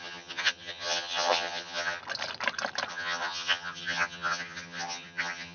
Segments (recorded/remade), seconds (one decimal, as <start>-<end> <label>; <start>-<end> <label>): 0.0-2.0 remade; 2.0-2.9 recorded; 2.9-5.5 remade